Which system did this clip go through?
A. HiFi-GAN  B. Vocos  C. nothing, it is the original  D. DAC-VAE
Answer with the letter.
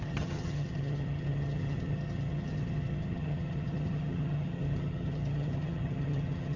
A